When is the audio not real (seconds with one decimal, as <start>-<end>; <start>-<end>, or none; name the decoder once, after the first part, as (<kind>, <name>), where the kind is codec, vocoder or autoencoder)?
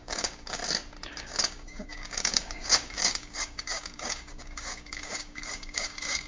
0.0-0.6 (codec, DAC); 1.1-6.3